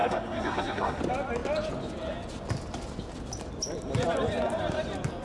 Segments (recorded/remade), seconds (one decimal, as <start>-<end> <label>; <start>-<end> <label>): 0.0-1.0 remade; 1.0-5.2 recorded